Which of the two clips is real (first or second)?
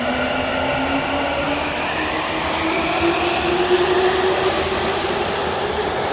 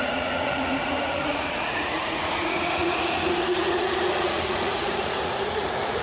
first